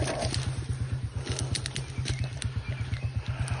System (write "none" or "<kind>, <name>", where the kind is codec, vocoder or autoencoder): none